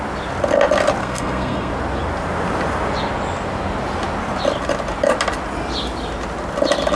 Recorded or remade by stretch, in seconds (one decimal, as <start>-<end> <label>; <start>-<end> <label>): 0.0-1.0 recorded; 1.0-1.7 remade; 1.7-7.0 recorded

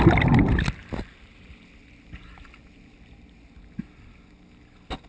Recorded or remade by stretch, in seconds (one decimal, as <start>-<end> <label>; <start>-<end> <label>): 0.0-5.1 recorded

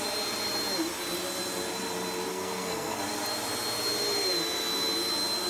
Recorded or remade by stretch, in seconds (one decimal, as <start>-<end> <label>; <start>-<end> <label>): 0.0-2.3 recorded; 2.3-3.0 remade; 3.0-5.5 recorded

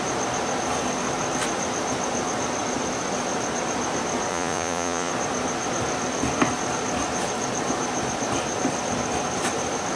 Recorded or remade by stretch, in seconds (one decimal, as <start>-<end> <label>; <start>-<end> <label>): 0.0-4.3 recorded; 4.3-5.1 remade; 5.1-10.0 recorded

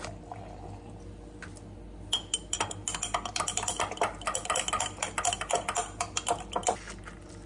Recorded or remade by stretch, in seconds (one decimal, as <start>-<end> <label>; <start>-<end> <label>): 0.0-7.5 recorded

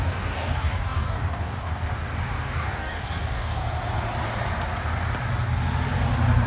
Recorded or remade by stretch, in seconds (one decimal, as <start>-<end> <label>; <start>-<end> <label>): 0.0-3.6 remade; 3.6-6.5 recorded